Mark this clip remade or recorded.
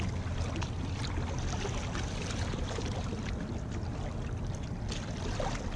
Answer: recorded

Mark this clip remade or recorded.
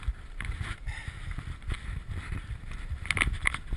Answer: remade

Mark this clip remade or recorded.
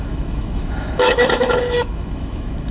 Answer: remade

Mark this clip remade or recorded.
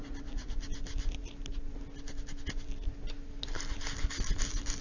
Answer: recorded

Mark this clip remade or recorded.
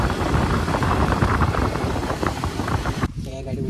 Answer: remade